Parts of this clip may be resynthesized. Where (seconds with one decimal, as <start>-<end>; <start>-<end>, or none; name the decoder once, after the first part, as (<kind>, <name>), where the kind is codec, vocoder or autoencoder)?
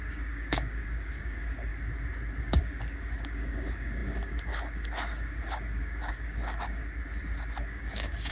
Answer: 0.0-1.7 (codec, DAC); 2.4-6.8; 7.6-8.3